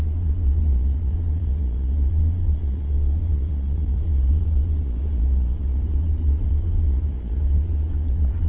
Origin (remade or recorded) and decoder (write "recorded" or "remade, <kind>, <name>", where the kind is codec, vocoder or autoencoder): remade, vocoder, Vocos